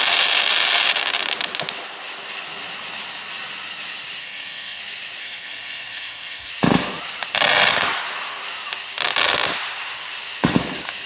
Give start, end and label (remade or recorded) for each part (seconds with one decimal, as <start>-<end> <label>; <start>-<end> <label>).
0.0-4.2 recorded; 4.2-4.8 remade; 4.8-5.2 recorded; 5.2-6.5 remade; 6.5-11.1 recorded